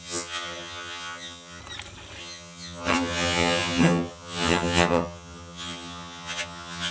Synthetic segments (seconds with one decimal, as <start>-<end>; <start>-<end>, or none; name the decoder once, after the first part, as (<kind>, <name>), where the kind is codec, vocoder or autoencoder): 0.0-1.6 (vocoder, HiFi-GAN); 2.2-6.9